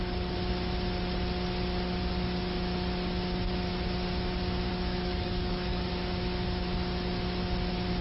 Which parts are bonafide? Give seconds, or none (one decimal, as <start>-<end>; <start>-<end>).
0.0-4.7; 5.9-8.0